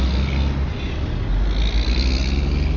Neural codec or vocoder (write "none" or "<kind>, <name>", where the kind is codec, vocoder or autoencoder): none